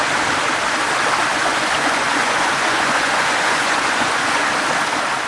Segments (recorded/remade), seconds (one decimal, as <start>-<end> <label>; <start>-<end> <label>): 0.0-1.3 recorded; 1.3-4.5 remade; 4.5-5.3 recorded